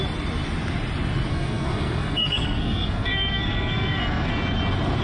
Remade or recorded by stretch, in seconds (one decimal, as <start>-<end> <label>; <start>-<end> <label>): 0.0-1.3 recorded; 1.3-4.3 remade; 4.3-5.0 recorded